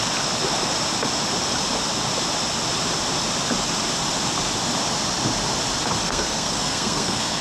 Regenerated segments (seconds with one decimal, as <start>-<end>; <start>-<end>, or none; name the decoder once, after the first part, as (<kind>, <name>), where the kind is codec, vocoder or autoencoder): 6.0-7.4 (codec, SNAC)